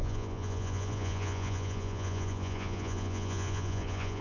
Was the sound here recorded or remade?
remade